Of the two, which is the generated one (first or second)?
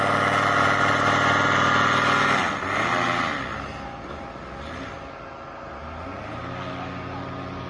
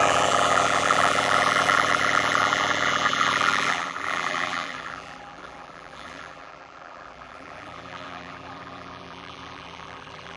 second